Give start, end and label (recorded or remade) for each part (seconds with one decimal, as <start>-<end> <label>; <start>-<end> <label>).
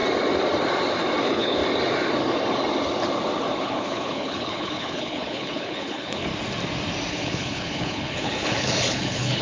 0.0-1.2 recorded; 1.2-1.6 remade; 1.6-3.6 recorded; 3.6-6.3 remade; 6.3-7.1 recorded; 7.1-9.4 remade